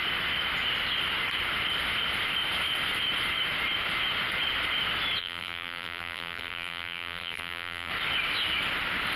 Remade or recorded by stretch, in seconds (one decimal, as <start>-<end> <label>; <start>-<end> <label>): 0.0-5.2 recorded; 5.2-7.9 remade; 7.9-9.2 recorded

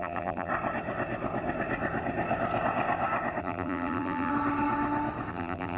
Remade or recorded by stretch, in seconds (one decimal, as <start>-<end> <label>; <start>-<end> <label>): 0.0-0.5 remade; 0.5-3.4 recorded; 3.4-4.3 remade; 4.3-5.3 recorded; 5.3-5.8 remade

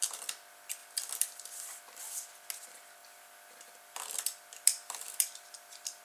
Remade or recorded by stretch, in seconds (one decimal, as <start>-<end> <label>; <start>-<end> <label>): 0.0-0.8 recorded; 0.8-2.0 remade; 2.0-3.0 recorded; 3.0-6.0 remade

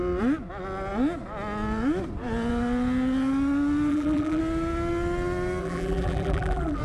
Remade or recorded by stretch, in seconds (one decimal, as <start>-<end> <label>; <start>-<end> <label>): 0.0-3.9 recorded; 3.9-4.4 remade; 4.4-5.6 recorded; 5.6-6.8 remade

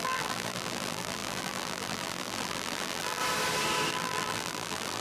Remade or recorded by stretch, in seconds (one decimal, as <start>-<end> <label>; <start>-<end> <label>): 0.0-3.2 remade; 3.2-3.9 recorded; 3.9-5.0 remade

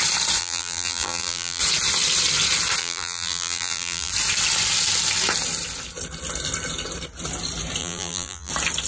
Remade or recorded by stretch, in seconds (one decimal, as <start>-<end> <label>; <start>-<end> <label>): 0.0-0.4 recorded; 0.4-1.6 remade; 1.6-2.8 recorded; 2.8-4.1 remade; 4.1-7.8 recorded; 7.8-8.5 remade; 8.5-8.9 recorded